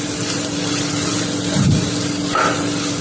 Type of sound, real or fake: real